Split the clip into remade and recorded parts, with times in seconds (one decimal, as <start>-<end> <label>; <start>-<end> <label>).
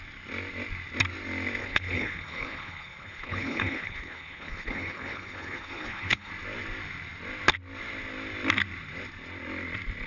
0.0-1.6 recorded; 1.6-6.3 remade; 6.3-10.1 recorded